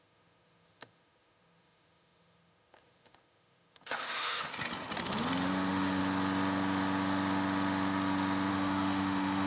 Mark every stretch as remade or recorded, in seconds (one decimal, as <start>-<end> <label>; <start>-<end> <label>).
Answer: 0.0-4.5 remade; 4.5-5.5 recorded; 5.5-6.0 remade; 6.0-8.5 recorded; 8.5-9.5 remade